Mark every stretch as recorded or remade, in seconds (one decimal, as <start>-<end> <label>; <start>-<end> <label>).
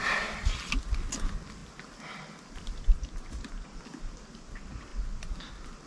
0.0-5.9 recorded